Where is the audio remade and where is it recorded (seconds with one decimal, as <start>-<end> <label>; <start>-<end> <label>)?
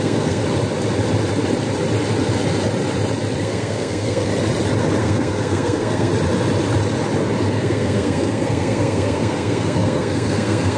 0.0-0.4 remade; 0.4-3.4 recorded; 3.4-4.3 remade; 4.3-5.0 recorded; 5.0-6.1 remade; 6.1-7.5 recorded; 7.5-10.8 remade